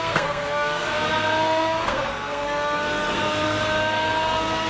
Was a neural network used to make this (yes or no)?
yes